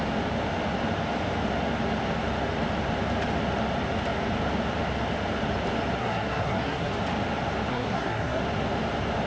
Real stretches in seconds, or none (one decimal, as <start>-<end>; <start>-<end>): 0.0-6.0; 6.9-7.7; 8.4-9.3